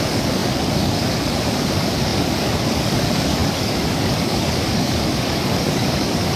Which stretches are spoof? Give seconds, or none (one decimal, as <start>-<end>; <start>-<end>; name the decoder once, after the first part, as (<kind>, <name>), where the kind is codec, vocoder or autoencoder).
0.0-6.4 (codec, DAC)